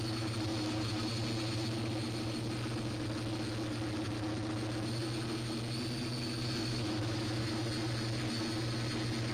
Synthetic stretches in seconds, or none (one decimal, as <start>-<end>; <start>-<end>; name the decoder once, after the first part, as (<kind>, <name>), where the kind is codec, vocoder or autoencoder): 0.5-1.1 (autoencoder, DAC-VAE); 6.6-7.4